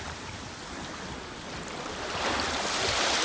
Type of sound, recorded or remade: recorded